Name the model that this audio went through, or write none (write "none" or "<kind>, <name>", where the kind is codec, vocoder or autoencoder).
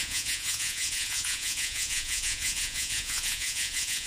vocoder, Vocos